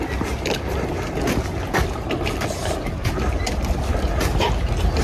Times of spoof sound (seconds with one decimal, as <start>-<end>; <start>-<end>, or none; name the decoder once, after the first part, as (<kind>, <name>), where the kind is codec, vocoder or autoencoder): none

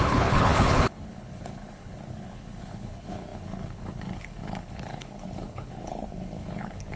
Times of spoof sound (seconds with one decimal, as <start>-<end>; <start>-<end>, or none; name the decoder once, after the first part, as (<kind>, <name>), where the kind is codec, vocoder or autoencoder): 0.0-7.0 (codec, HILCodec)

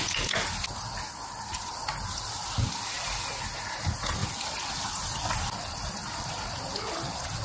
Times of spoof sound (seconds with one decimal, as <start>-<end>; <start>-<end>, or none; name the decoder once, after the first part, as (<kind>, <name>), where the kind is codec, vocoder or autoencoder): 4.2-6.8 (vocoder, BigVGAN v2)

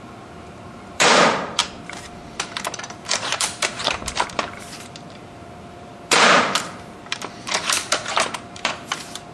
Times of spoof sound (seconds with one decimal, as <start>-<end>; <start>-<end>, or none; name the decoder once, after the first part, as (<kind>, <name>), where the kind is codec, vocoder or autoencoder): 0.0-9.3 (vocoder, BigVGAN v2)

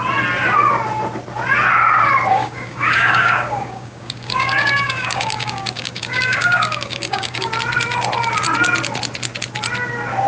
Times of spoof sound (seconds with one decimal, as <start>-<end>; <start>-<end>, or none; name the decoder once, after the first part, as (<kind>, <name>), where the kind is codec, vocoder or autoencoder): 2.3-7.5 (codec, DAC)

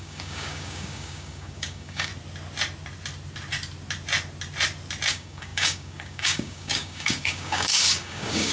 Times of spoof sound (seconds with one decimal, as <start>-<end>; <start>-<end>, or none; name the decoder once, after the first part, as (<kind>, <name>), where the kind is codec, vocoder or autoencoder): 0.0-2.1 (codec, DAC); 5.1-8.5

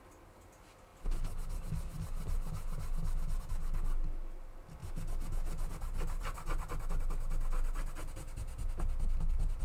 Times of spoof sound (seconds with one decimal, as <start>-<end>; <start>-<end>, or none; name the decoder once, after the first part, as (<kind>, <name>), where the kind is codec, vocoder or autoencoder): none